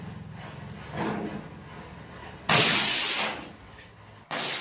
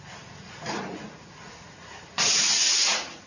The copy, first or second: second